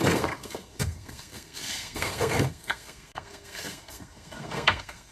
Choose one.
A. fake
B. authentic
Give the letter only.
A